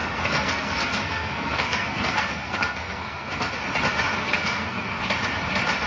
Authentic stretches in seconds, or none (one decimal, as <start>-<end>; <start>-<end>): 3.5-4.2; 5.0-5.9